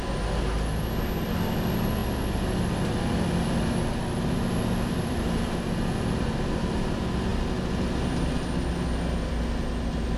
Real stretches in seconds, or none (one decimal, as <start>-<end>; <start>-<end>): 0.0-10.2

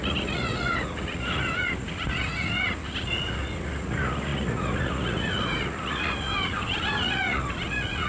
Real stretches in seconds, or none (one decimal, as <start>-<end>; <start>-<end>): none

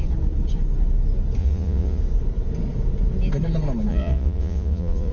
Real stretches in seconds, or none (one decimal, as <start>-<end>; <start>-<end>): 0.0-1.4; 2.0-3.9

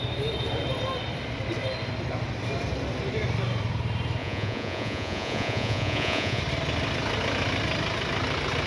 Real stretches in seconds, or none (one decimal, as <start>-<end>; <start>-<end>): 0.0-4.2; 6.4-8.7

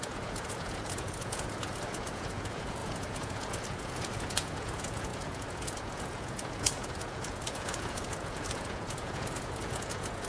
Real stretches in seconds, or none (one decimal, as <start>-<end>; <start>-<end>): none